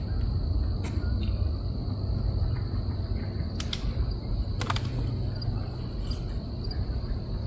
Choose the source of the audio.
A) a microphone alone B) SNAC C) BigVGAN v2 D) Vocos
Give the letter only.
A